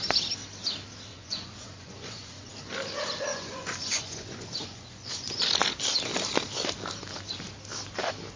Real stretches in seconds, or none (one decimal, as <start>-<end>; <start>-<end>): 0.0-1.1; 2.5-3.3; 5.4-8.4